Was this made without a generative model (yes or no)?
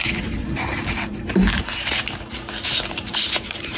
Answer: no